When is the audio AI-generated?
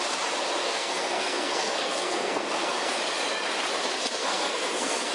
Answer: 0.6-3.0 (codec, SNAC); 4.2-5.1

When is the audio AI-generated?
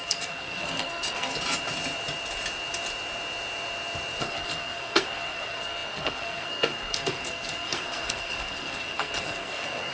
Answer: 0.0-1.3 (codec, SNAC); 4.2-9.9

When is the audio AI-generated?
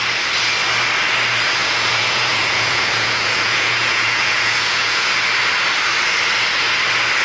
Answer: 1.6-5.1 (vocoder, Vocos)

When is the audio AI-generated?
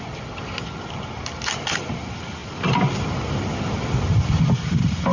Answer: none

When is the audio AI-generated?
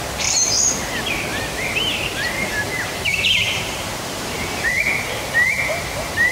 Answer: 3.1-4.8 (vocoder, BigVGAN v2)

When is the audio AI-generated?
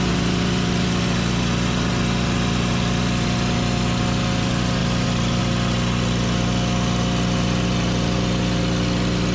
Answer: none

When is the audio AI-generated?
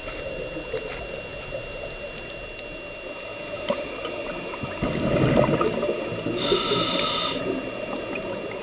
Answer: none